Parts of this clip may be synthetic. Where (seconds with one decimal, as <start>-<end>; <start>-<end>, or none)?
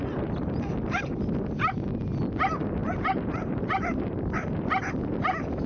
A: 2.8-4.2